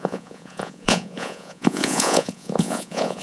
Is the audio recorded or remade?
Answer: remade